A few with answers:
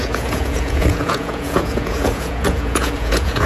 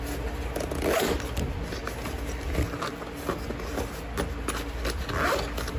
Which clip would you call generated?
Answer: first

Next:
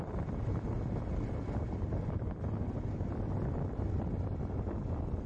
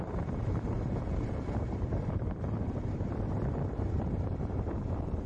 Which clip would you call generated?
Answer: second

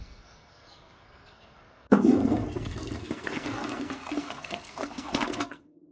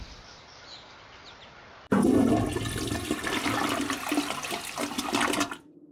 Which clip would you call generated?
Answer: first